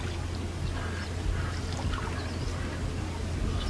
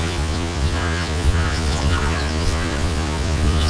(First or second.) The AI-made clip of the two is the second